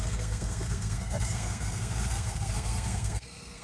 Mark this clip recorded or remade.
remade